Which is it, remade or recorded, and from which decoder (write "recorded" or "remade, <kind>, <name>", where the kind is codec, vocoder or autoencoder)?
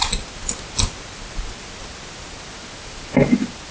recorded